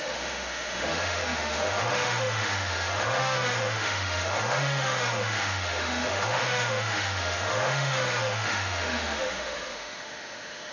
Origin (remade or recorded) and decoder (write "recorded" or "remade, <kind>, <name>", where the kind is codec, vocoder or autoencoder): remade, autoencoder, DAC-VAE